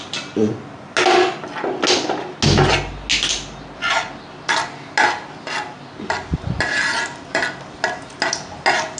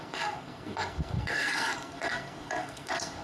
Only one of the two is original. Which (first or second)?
first